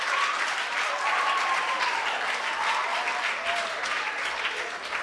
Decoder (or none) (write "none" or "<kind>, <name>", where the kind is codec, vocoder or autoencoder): none